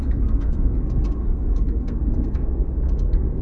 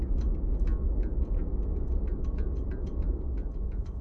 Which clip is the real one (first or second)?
second